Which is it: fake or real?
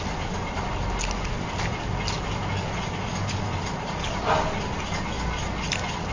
real